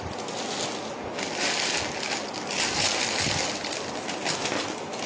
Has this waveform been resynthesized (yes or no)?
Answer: no